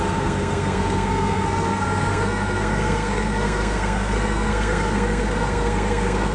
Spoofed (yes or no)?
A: yes